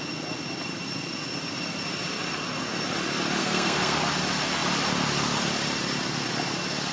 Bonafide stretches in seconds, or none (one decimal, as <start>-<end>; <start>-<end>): 0.0-3.4; 4.0-6.9